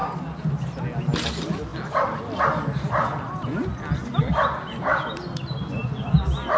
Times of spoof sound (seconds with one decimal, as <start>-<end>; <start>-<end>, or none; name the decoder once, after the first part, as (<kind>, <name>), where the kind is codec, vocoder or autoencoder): 0.0-0.5 (vocoder, BigVGAN v2); 3.7-5.2